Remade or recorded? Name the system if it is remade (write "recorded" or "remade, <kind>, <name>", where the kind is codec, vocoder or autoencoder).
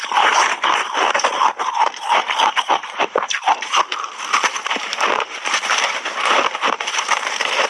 remade, vocoder, BigVGAN v2